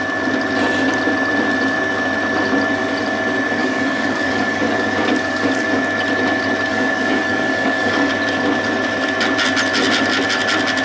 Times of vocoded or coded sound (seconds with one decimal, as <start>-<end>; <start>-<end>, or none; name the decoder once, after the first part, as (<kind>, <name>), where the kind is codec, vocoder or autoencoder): 3.6-5.8 (codec, DAC); 6.7-8.1